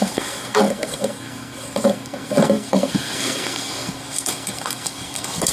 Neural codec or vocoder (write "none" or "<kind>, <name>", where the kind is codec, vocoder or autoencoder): codec, SNAC